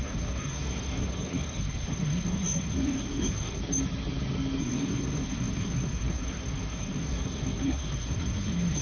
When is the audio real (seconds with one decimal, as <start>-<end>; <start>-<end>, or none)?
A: 3.6-4.6